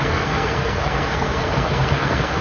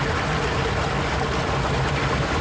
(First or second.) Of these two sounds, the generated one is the first